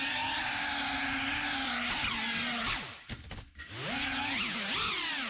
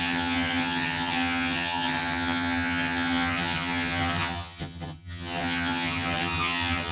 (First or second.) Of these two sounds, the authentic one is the first